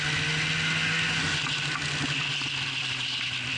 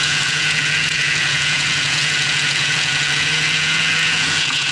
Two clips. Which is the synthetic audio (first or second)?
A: second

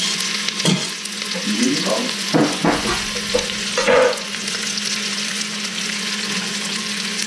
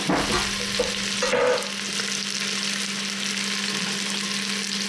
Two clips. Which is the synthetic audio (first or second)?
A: first